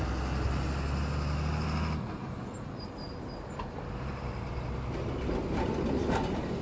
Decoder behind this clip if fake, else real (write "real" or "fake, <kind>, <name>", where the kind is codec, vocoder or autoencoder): real